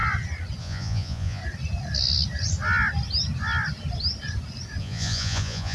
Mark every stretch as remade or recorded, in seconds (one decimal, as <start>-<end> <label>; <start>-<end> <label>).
0.0-0.6 recorded; 0.6-1.4 remade; 1.4-4.8 recorded; 4.8-5.7 remade